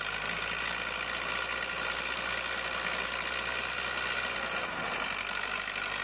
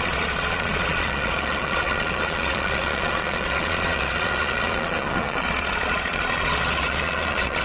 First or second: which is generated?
second